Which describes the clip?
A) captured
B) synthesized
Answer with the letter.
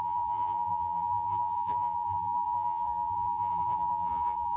B